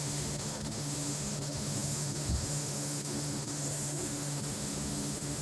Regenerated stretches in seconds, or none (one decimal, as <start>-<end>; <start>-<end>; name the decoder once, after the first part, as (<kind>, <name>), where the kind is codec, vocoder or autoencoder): 0.0-5.4 (autoencoder, DAC-VAE)